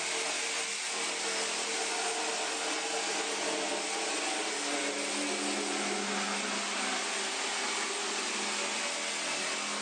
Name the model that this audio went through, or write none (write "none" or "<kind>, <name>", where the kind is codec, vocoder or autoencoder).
none